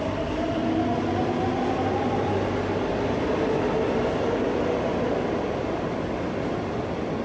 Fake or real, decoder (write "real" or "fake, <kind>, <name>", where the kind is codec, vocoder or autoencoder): real